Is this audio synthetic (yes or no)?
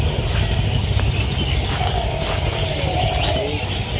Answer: no